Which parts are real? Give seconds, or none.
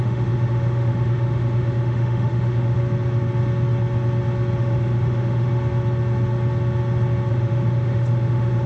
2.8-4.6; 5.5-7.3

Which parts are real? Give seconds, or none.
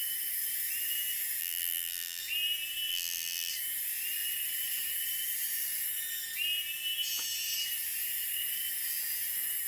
0.0-1.4; 2.2-2.9; 3.5-9.7